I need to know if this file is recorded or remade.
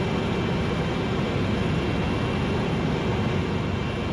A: recorded